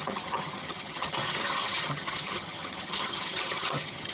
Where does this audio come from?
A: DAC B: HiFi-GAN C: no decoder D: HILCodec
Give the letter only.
B